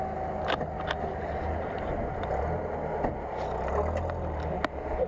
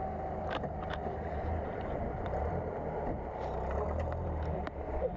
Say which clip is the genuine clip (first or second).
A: first